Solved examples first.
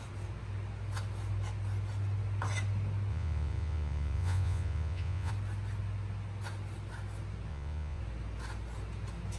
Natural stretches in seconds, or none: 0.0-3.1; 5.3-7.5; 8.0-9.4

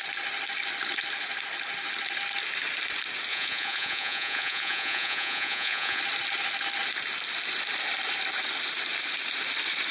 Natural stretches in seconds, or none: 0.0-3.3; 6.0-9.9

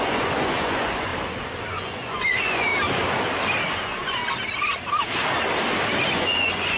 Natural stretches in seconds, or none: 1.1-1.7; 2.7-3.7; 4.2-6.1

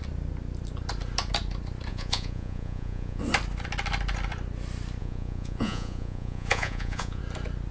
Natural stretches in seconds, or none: 0.0-1.9; 3.2-5.0; 7.2-7.7

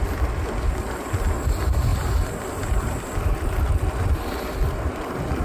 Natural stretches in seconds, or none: 0.0-5.4

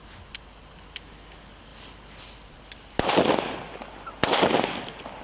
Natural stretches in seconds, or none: 0.0-5.2

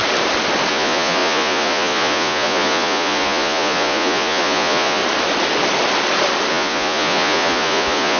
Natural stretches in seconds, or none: 0.0-0.7; 5.0-6.5

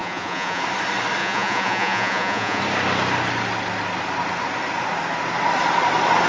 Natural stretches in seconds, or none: 0.6-1.2; 2.6-6.3